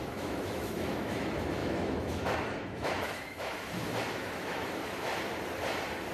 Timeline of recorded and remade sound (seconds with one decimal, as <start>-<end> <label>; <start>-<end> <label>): 0.0-5.1 remade; 5.1-6.1 recorded